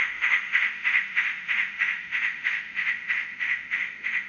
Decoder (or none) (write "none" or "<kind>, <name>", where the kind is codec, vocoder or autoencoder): autoencoder, DAC-VAE